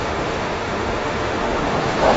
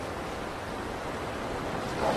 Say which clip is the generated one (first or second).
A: first